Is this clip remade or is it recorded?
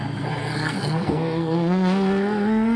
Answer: remade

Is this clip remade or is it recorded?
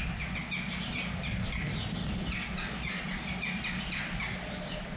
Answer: recorded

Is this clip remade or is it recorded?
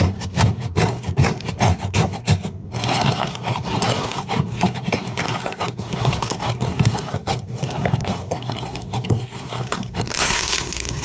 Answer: remade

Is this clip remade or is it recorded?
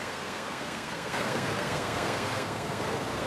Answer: remade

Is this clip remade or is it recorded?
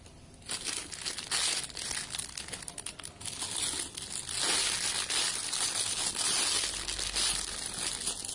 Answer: recorded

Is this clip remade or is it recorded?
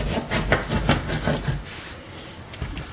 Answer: recorded